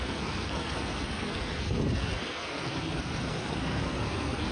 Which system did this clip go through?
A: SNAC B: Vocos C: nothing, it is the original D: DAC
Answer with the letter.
A